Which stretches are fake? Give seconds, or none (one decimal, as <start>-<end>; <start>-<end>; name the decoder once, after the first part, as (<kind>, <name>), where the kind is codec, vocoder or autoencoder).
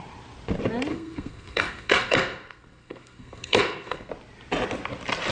0.9-4.1 (codec, SNAC)